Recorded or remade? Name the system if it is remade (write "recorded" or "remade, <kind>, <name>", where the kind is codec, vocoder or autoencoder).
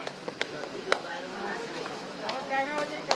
remade, autoencoder, DAC-VAE